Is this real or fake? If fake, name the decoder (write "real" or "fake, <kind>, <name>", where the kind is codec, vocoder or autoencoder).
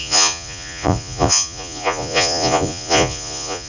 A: fake, vocoder, Vocos